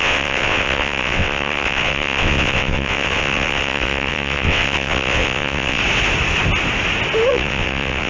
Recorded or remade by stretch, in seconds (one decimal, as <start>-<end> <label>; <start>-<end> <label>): 0.0-5.8 remade; 5.8-7.3 recorded; 7.3-8.1 remade